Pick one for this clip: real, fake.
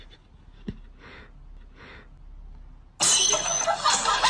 real